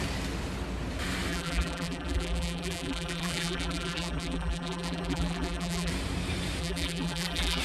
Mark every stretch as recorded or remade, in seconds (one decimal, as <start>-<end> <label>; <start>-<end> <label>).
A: 0.0-1.3 recorded; 1.3-5.9 remade; 5.9-6.6 recorded; 6.6-7.6 remade